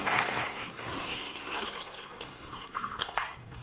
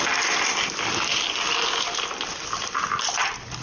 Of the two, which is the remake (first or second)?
first